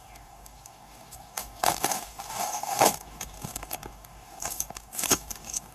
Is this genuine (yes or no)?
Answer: no